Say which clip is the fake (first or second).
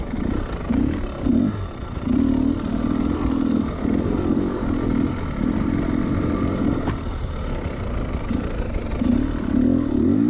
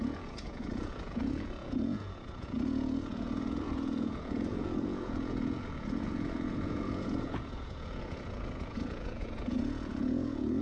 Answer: second